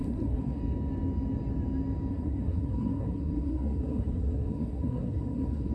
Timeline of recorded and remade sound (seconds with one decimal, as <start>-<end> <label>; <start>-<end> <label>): 0.0-0.6 remade; 0.6-2.1 recorded; 2.1-5.7 remade